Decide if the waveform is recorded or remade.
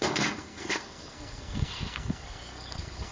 remade